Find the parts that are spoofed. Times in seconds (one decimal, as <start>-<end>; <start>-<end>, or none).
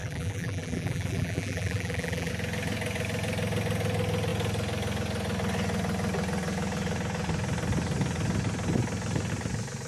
0.0-2.3